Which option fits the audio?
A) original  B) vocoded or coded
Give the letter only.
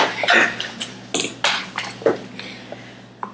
A